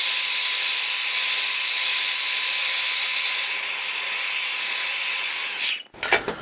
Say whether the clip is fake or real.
real